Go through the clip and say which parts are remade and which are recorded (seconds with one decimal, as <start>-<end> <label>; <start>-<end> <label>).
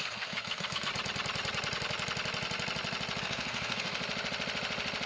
0.0-0.9 remade; 0.9-3.2 recorded; 3.2-4.0 remade; 4.0-5.1 recorded